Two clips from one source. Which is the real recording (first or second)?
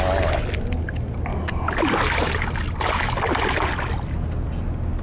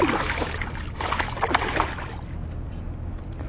first